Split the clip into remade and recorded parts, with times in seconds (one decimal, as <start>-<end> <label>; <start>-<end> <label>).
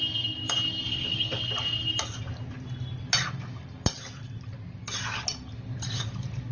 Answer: 0.0-0.9 recorded; 0.9-1.4 remade; 1.4-6.5 recorded